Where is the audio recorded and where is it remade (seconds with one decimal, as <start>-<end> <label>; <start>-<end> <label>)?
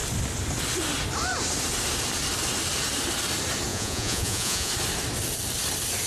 0.0-3.7 recorded; 3.7-4.7 remade; 4.7-6.1 recorded